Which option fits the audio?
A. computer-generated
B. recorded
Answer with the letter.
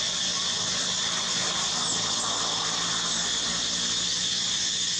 B